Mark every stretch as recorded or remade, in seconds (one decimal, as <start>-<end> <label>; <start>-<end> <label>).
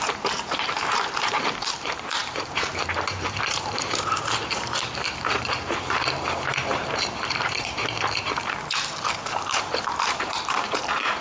0.0-11.2 remade